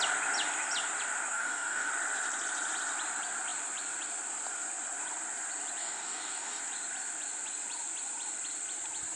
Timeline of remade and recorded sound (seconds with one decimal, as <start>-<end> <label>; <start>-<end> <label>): 0.0-1.3 recorded; 1.3-1.9 remade; 1.9-5.8 recorded; 5.8-6.6 remade; 6.6-9.2 recorded